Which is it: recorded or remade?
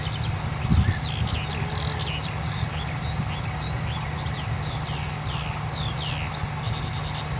recorded